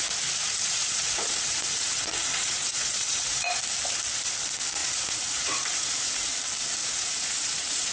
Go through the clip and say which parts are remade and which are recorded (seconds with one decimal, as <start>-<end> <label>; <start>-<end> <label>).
0.0-0.4 recorded; 0.4-3.6 remade; 3.6-4.8 recorded; 4.8-6.3 remade; 6.3-6.8 recorded; 6.8-7.9 remade